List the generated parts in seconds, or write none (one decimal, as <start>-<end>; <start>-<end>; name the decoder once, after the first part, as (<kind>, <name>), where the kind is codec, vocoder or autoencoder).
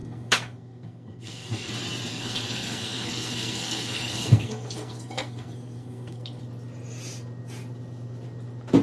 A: 0.0-1.7 (codec, SNAC); 2.1-6.4